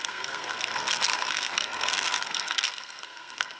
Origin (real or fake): fake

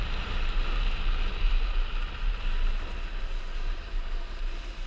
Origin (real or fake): real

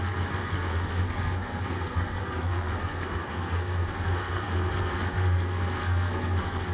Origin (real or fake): fake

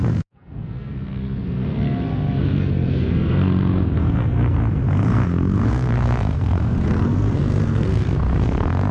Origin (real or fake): fake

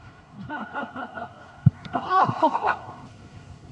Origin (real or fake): fake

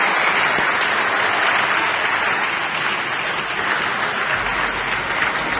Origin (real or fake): real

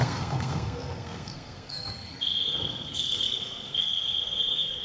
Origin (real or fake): fake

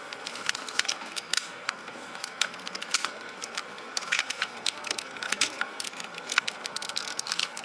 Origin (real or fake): fake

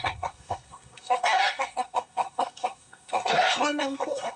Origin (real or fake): fake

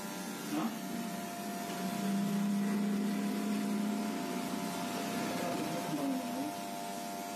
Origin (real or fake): real